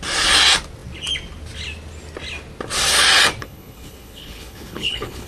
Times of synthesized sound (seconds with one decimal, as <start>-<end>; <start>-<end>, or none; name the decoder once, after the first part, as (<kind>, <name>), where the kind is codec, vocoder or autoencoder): 3.4-5.3 (codec, HILCodec)